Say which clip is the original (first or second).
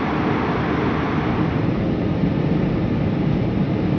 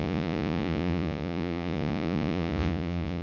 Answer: first